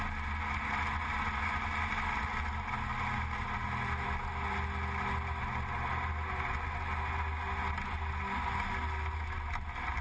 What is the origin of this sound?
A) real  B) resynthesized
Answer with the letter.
A